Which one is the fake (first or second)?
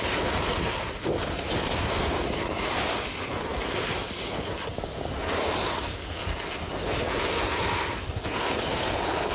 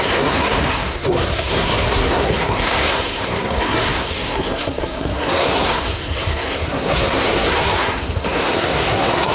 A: second